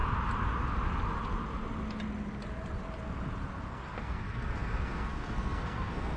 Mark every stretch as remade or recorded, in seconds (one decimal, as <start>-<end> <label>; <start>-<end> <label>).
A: 0.0-3.7 recorded; 3.7-6.2 remade